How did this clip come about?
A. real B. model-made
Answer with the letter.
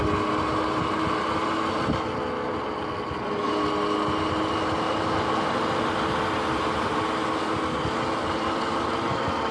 A